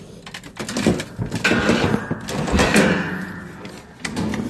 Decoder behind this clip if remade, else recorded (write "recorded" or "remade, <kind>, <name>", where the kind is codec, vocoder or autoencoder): recorded